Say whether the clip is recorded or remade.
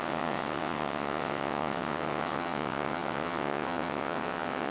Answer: remade